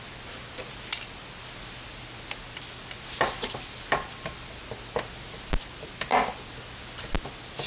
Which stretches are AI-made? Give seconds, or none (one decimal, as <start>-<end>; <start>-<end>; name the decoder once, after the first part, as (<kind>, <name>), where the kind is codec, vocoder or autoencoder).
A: none